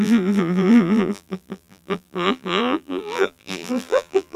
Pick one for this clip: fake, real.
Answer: fake